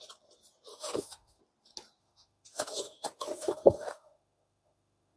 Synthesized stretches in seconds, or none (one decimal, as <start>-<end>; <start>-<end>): 0.7-1.4; 2.0-5.2